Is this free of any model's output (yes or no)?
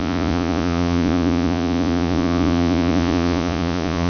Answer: no